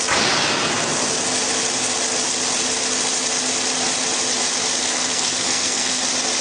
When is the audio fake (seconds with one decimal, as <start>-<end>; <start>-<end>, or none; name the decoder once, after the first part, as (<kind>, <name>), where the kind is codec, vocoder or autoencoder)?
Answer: 4.8-6.0 (codec, SNAC)